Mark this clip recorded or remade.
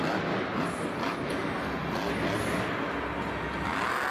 recorded